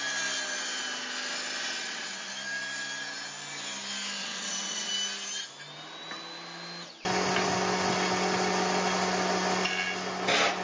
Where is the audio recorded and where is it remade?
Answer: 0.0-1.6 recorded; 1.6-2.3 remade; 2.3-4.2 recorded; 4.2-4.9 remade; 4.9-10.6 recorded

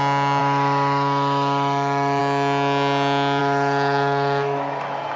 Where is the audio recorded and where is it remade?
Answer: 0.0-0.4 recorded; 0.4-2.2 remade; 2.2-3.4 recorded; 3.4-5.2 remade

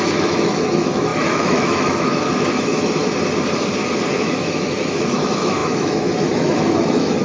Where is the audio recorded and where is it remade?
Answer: 0.0-3.0 remade; 3.0-4.1 recorded; 4.1-7.2 remade

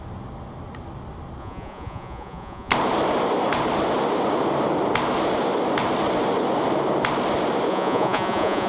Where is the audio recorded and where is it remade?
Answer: 0.0-1.4 recorded; 1.4-2.7 remade; 2.7-7.7 recorded; 7.7-8.7 remade

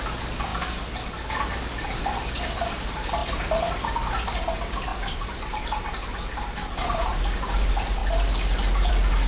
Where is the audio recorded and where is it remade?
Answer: 0.0-4.9 recorded; 4.9-7.2 remade; 7.2-9.3 recorded

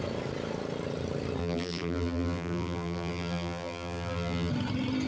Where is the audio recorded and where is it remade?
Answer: 0.0-1.4 recorded; 1.4-4.5 remade; 4.5-5.1 recorded

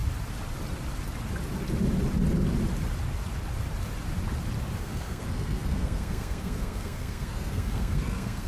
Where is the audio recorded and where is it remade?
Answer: 0.0-4.8 recorded; 4.8-8.5 remade

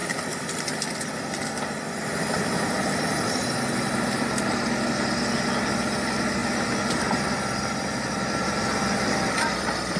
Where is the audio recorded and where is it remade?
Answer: 0.0-10.0 recorded